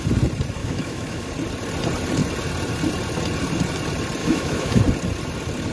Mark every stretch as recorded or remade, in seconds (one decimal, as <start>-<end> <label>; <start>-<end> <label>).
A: 0.0-0.6 recorded; 0.6-1.3 remade; 1.3-4.2 recorded; 4.2-4.8 remade; 4.8-5.7 recorded